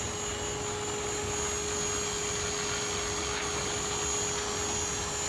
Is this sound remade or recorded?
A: recorded